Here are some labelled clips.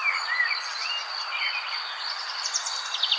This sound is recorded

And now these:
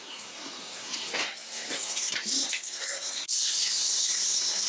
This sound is remade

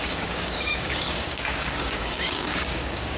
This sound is remade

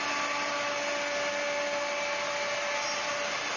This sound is recorded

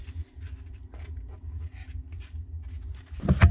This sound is recorded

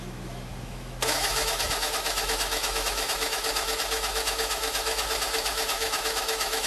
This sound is remade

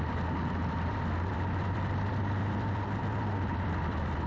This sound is remade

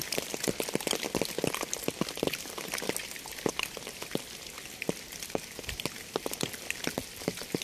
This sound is recorded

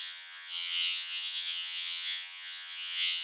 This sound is remade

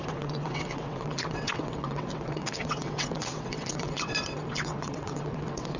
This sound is remade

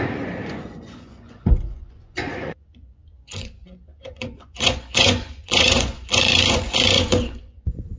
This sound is remade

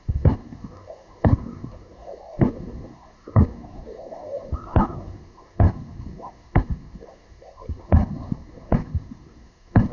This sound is remade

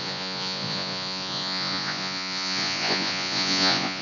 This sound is remade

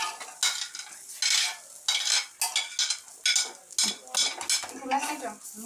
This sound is recorded